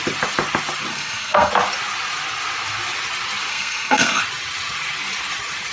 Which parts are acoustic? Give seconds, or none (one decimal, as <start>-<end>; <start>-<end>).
0.0-0.9; 1.5-3.5; 4.2-5.7